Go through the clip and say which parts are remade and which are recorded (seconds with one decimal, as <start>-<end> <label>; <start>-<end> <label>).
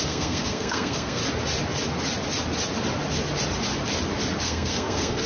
0.0-1.2 remade; 1.2-4.4 recorded; 4.4-5.3 remade